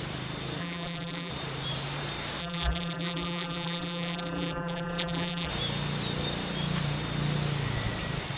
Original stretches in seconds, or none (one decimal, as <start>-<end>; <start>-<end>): 0.0-0.6; 1.3-2.4; 5.5-8.4